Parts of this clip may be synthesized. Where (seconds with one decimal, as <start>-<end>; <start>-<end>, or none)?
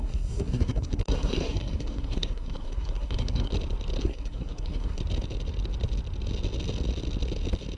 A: 0.0-3.5; 4.0-5.0